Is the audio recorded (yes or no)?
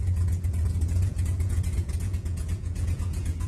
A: no